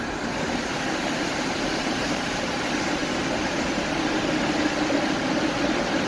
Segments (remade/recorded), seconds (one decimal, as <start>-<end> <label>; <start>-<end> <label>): 0.0-0.7 recorded; 0.7-2.6 remade; 2.6-6.1 recorded